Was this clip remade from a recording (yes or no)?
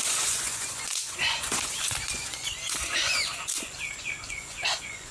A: yes